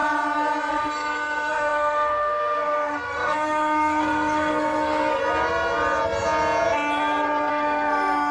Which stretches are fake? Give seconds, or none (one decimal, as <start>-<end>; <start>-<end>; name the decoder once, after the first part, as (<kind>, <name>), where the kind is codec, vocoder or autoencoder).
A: 0.7-5.2 (codec, SNAC); 7.5-8.3